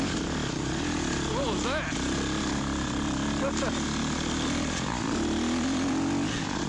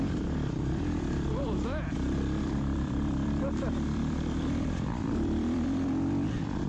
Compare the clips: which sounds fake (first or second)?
second